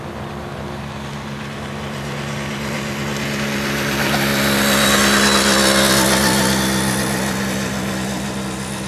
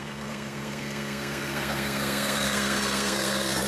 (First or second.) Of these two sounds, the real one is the first